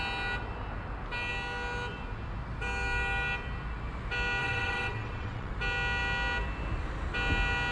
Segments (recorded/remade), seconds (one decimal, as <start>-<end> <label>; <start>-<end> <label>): 0.0-4.4 recorded; 4.4-5.5 remade; 5.5-7.7 recorded